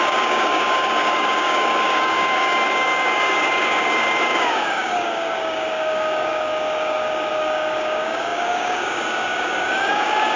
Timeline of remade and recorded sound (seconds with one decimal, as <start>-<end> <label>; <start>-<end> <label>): 0.0-10.4 remade